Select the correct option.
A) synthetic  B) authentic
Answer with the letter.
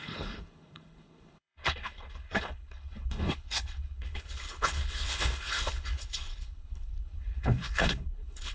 A